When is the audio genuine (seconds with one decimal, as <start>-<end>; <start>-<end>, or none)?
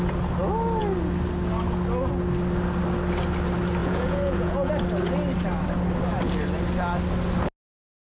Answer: 0.0-3.8; 4.7-8.0